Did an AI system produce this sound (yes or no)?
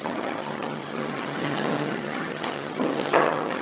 yes